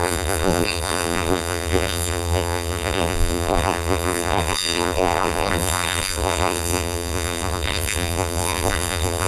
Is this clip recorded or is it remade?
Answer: remade